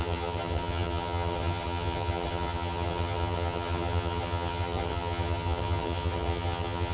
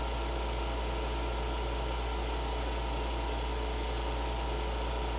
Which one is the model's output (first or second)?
first